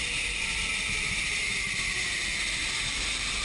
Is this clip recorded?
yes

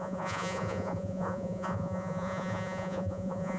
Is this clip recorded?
no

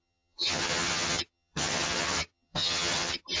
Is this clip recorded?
no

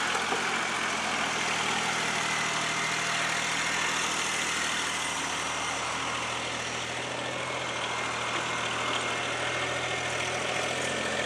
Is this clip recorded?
yes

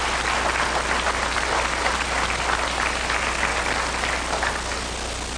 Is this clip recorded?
yes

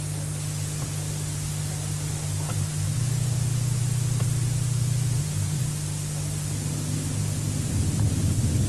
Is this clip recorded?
yes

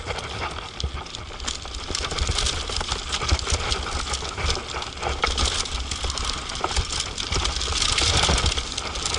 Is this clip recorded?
yes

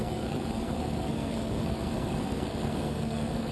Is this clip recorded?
no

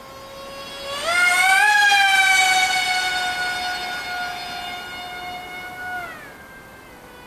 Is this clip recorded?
yes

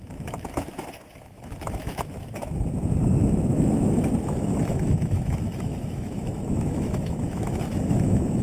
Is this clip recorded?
no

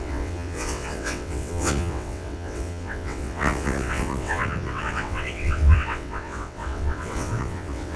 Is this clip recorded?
no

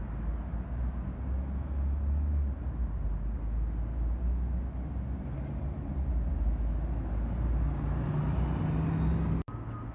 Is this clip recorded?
yes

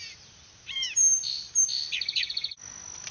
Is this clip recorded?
yes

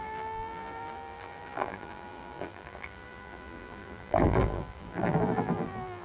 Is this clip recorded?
no